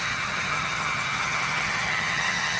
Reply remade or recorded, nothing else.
remade